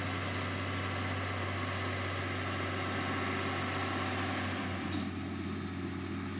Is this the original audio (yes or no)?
yes